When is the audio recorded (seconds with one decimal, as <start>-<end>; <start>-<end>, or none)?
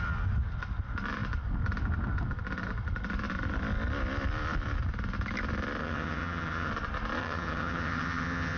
0.0-5.8; 6.7-7.2